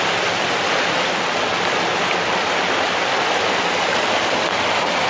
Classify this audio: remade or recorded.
recorded